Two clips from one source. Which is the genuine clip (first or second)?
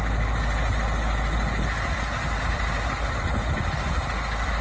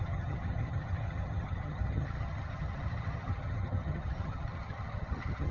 first